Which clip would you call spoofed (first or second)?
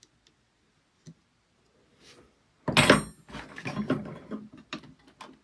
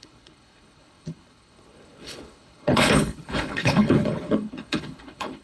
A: second